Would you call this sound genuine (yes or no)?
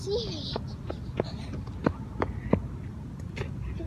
yes